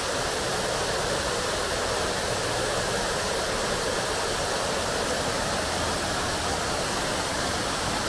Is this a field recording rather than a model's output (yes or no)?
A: yes